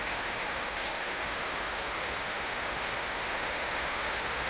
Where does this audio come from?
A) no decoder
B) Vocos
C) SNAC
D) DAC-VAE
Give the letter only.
D